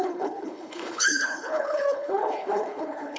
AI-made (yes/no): yes